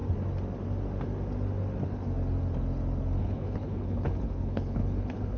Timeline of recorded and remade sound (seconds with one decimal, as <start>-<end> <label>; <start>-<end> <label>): 0.0-3.2 recorded; 3.2-5.4 remade